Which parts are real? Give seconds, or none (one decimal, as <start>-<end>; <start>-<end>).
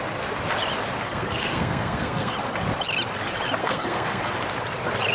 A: 0.0-1.0; 2.3-3.6; 4.3-5.1